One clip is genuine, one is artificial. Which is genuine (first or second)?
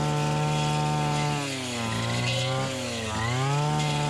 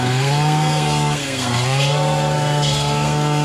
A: first